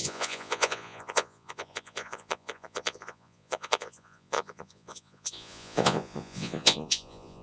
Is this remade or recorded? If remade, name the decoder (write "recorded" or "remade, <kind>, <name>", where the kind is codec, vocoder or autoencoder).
remade, vocoder, Vocos